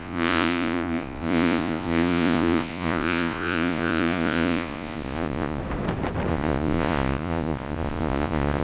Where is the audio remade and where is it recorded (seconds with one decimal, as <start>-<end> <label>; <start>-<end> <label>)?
0.0-5.6 remade; 5.6-6.3 recorded; 6.3-8.6 remade